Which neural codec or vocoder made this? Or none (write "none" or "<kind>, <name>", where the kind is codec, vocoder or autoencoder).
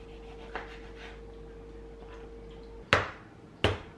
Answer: none